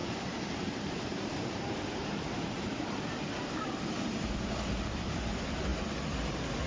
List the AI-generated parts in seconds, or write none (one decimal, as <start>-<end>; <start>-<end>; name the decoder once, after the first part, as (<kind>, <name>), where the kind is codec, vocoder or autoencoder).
0.0-4.0 (vocoder, BigVGAN v2)